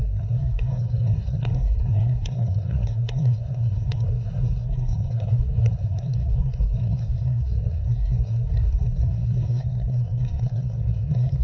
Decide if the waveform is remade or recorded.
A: remade